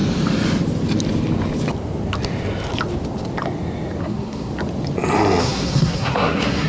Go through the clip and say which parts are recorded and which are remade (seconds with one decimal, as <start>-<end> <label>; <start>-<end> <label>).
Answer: 0.0-4.0 recorded; 4.0-4.5 remade; 4.5-5.4 recorded; 5.4-6.7 remade